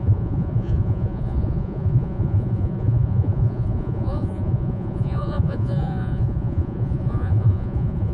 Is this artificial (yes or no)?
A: yes